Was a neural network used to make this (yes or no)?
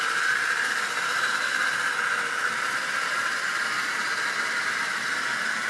no